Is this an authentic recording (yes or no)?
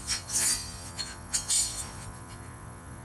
no